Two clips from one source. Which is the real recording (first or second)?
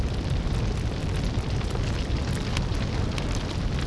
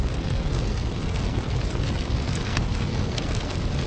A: first